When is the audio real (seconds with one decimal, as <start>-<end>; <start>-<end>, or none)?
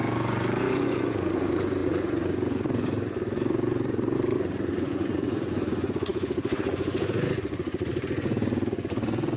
none